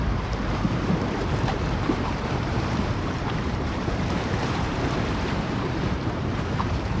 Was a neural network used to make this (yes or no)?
yes